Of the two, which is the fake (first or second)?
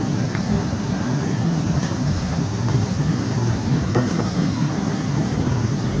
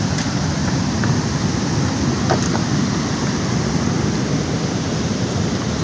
first